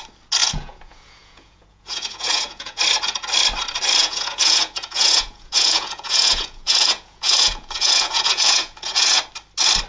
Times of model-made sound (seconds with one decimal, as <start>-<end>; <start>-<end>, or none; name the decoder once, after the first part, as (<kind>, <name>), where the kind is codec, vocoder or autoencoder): 0.4-2.8 (vocoder, Vocos); 4.0-9.2